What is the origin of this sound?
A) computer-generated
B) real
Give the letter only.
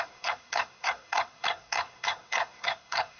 A